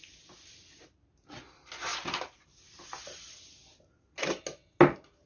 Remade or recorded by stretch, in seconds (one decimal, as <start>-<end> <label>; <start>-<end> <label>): 0.0-1.9 recorded; 1.9-3.3 remade; 3.3-5.3 recorded